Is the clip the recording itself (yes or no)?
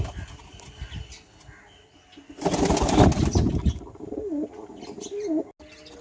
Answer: yes